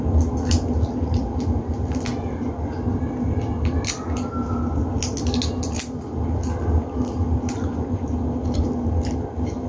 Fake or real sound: real